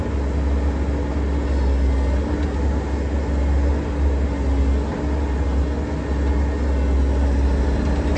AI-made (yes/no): no